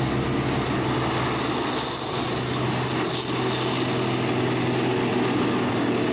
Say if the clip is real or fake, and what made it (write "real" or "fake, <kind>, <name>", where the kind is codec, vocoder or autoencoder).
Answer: real